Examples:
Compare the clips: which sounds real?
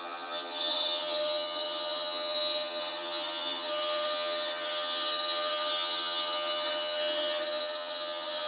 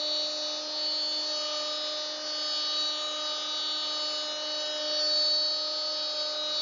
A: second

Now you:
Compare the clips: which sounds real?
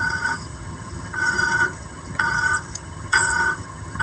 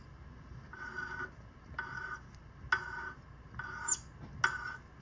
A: second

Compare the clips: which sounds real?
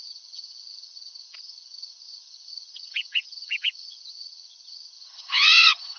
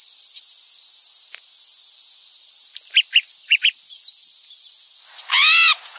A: second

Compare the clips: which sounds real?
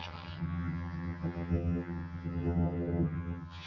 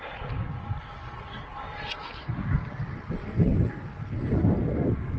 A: second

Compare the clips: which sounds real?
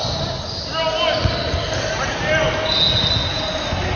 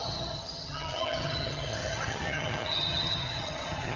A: first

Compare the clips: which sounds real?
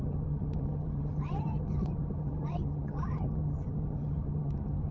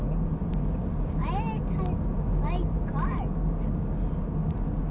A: second